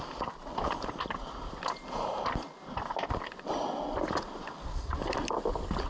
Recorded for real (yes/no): yes